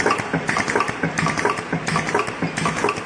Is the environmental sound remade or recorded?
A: recorded